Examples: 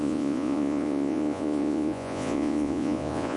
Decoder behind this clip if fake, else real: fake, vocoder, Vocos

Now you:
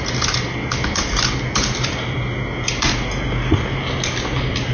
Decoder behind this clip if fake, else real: real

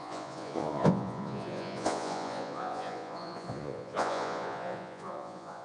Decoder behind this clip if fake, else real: fake, vocoder, Vocos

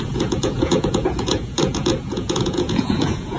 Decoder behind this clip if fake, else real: fake, vocoder, Vocos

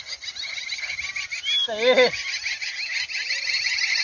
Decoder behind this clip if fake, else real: real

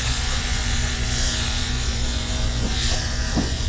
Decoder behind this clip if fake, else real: fake, vocoder, Vocos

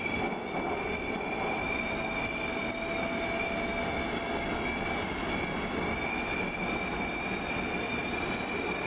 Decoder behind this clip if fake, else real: real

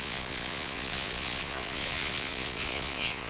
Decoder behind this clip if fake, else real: fake, vocoder, Vocos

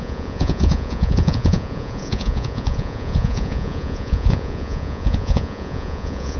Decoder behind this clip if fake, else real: fake, vocoder, Vocos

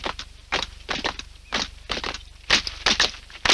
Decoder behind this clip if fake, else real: real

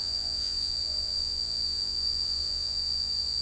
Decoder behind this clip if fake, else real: fake, vocoder, Vocos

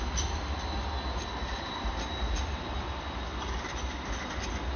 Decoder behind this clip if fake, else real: real